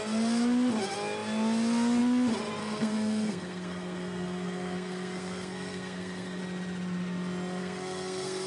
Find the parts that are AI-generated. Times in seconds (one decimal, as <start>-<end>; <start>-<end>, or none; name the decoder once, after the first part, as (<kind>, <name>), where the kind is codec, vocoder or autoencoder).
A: 2.6-6.4 (codec, SNAC); 7.6-8.5